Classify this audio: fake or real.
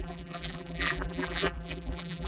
fake